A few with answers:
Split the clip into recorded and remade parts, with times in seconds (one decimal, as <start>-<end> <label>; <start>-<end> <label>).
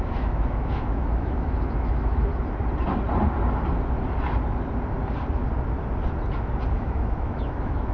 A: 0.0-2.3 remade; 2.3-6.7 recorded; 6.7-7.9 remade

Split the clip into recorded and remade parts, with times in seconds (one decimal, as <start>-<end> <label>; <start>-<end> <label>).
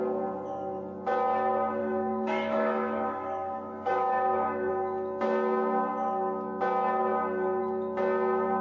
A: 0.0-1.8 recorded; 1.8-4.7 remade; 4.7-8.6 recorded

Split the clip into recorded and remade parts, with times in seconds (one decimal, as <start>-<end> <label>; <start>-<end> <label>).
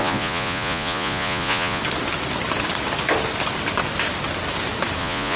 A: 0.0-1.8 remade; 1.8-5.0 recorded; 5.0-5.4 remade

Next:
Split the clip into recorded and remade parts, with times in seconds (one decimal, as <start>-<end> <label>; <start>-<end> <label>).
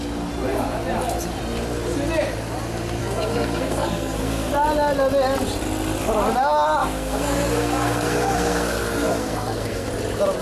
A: 0.0-3.0 recorded; 3.0-4.5 remade; 4.5-6.8 recorded; 6.8-9.9 remade; 9.9-10.4 recorded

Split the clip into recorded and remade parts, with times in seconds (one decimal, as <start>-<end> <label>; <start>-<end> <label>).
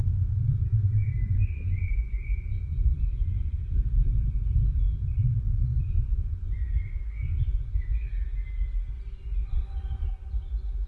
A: 0.0-1.4 recorded; 1.4-3.8 remade; 3.8-5.7 recorded; 5.7-8.1 remade; 8.1-9.5 recorded; 9.5-10.1 remade; 10.1-10.9 recorded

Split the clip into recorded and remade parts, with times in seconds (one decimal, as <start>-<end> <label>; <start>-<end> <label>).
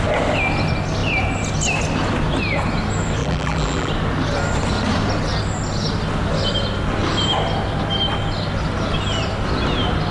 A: 0.0-3.2 recorded; 3.2-3.9 remade; 3.9-10.1 recorded